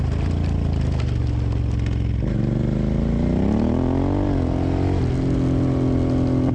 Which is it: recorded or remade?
recorded